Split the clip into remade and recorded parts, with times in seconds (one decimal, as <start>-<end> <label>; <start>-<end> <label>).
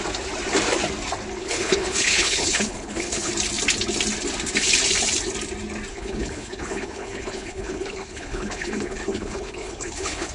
0.0-1.4 recorded; 1.4-3.3 remade; 3.3-5.9 recorded; 5.9-10.3 remade